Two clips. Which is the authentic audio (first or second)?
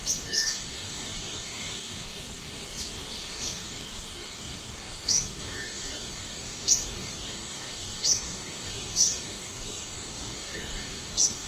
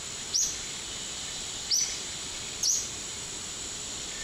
second